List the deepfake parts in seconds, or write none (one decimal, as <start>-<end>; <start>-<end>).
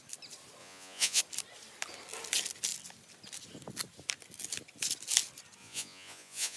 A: 0.6-1.2; 5.6-6.6